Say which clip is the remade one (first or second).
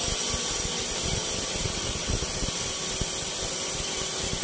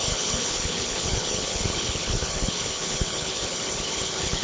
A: second